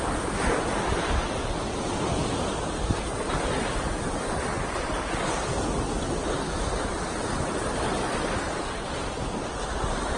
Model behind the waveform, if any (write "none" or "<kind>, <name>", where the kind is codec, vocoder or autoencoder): none